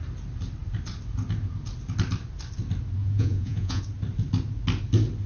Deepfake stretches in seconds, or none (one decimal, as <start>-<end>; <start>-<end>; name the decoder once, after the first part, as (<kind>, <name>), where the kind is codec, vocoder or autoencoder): 3.0-3.8 (vocoder, Vocos)